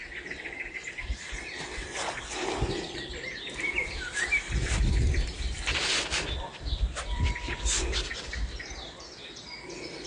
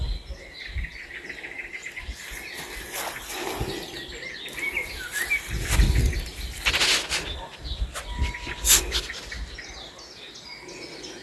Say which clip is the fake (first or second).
first